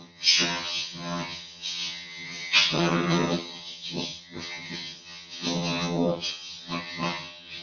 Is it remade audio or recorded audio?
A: remade